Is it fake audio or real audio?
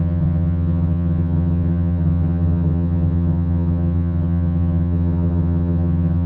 fake